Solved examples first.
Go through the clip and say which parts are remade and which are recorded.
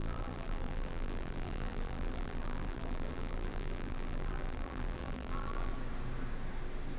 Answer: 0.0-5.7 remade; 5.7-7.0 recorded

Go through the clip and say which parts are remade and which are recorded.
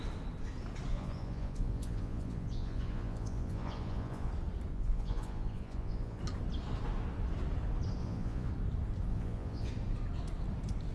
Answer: 0.0-0.9 recorded; 0.9-4.3 remade; 4.3-4.7 recorded; 4.7-6.2 remade; 6.2-8.0 recorded; 8.0-8.5 remade; 8.5-9.1 recorded; 9.1-9.7 remade; 9.7-10.9 recorded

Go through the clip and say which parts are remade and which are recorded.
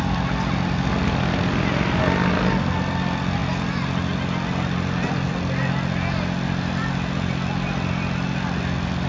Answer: 0.0-9.1 recorded